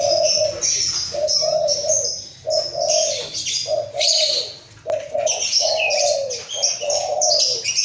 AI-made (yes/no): no